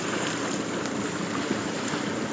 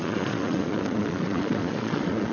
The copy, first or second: second